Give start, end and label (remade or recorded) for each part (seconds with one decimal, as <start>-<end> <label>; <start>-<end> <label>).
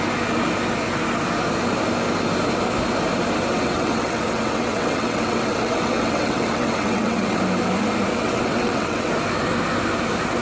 0.0-3.5 recorded; 3.5-7.4 remade; 7.4-8.1 recorded; 8.1-9.1 remade; 9.1-10.4 recorded